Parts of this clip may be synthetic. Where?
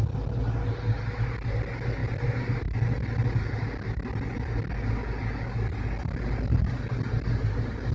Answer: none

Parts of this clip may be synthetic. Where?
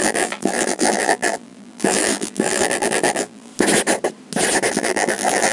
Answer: 0.0-3.5 (vocoder, BigVGAN v2); 4.7-5.5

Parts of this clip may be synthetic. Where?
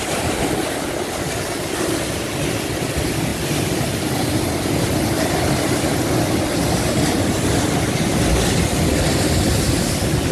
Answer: 8.9-9.7 (vocoder, BigVGAN v2)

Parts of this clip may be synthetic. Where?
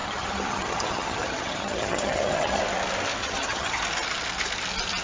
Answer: 0.0-2.6 (vocoder, HiFi-GAN); 3.2-3.8